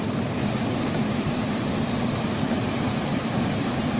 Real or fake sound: real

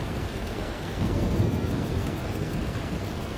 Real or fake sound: fake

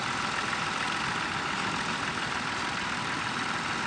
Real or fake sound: real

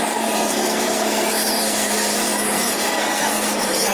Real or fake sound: fake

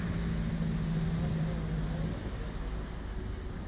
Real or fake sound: real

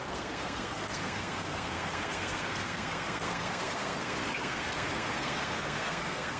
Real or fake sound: fake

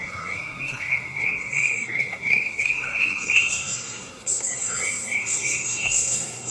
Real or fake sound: fake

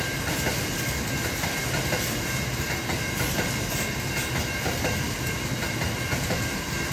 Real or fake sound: real